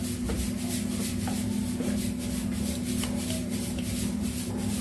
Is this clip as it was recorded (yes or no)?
yes